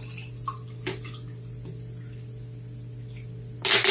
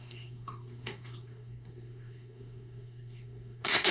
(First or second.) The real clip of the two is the first